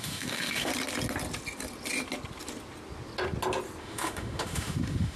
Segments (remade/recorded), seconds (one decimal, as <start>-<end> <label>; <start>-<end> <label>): 0.0-0.7 remade; 0.7-3.8 recorded; 3.8-5.2 remade

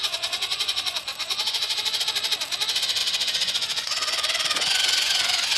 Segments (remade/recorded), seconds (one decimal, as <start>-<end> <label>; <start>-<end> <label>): 0.0-2.0 remade; 2.0-3.0 recorded; 3.0-5.6 remade

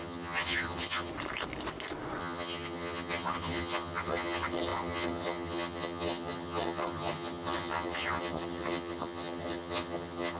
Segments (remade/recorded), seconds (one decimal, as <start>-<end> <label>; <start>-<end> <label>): 0.0-1.1 remade; 1.1-2.2 recorded; 2.2-10.4 remade

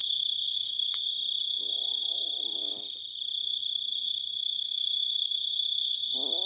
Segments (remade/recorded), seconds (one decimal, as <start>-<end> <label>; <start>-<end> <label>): 0.0-1.0 remade; 1.0-3.9 recorded; 3.9-6.0 remade; 6.0-6.5 recorded

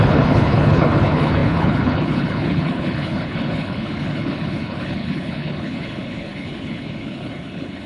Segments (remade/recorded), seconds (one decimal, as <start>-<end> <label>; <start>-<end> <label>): 0.0-7.9 remade

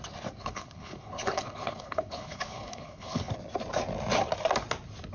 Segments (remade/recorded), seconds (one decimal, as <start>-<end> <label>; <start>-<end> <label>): 0.0-0.4 recorded; 0.4-3.3 remade; 3.3-5.1 recorded